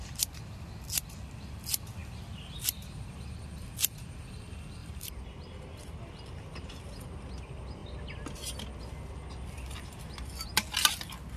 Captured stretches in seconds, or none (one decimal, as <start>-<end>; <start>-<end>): 0.0-4.8; 5.8-11.4

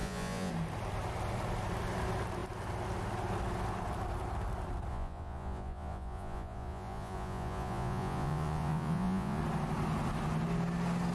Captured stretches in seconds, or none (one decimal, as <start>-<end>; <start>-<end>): 0.5-4.9; 9.4-11.1

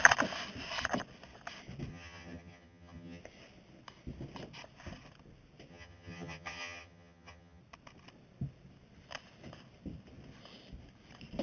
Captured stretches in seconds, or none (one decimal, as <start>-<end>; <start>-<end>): 0.0-1.9; 3.2-5.7; 7.6-11.4